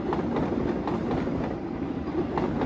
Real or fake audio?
real